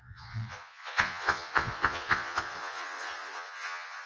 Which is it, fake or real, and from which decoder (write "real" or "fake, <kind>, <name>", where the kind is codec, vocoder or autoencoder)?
fake, vocoder, Vocos